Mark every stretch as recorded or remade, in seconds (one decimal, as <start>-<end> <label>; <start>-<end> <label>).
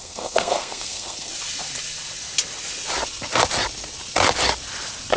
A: 0.0-1.3 remade; 1.3-5.2 recorded